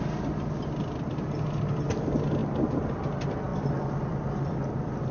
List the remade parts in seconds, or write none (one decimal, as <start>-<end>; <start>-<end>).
none